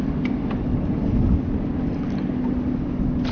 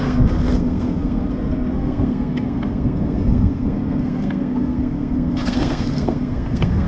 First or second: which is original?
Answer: first